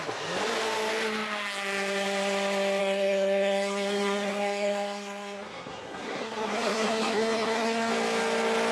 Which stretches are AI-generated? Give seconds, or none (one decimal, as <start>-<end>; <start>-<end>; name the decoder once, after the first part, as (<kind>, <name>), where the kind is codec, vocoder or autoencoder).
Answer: 2.8-7.9 (codec, SNAC)